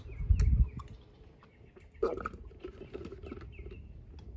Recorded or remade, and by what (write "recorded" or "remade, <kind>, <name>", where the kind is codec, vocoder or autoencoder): recorded